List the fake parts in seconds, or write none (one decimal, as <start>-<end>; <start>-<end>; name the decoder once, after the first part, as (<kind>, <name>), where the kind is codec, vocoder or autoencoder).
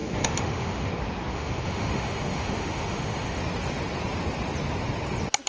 0.0-0.9 (autoencoder, DAC-VAE); 1.3-3.4